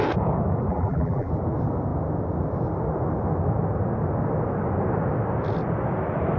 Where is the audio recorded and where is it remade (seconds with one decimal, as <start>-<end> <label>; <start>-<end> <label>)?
0.0-0.7 recorded; 0.7-1.3 remade; 1.3-6.4 recorded